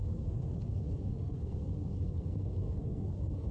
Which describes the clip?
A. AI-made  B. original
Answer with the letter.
A